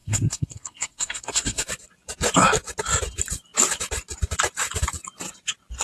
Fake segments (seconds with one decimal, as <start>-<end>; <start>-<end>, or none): 0.0-1.7